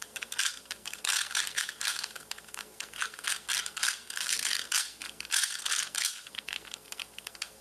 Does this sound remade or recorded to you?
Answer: remade